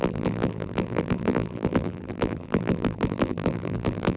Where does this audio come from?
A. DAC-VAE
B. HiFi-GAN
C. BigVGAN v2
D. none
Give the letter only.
C